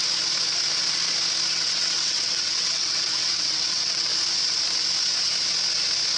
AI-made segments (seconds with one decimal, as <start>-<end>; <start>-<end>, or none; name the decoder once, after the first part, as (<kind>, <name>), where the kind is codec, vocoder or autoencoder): 1.5-4.1 (vocoder, WaveNeXt)